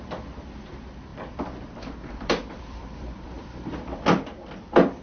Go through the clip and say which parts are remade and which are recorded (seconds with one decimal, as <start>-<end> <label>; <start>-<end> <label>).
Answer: 0.0-1.1 recorded; 1.1-3.8 remade; 3.8-5.0 recorded